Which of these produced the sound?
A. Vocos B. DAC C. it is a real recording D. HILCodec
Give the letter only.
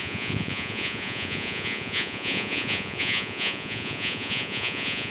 A